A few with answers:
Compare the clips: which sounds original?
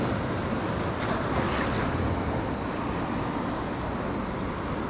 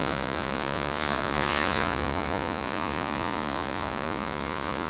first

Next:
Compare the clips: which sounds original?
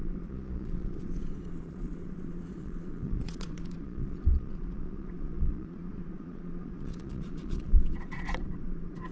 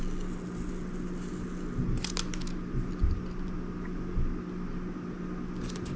second